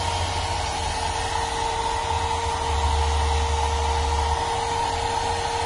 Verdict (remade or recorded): recorded